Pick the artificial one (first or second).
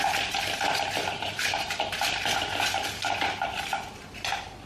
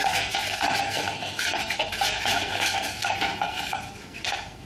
second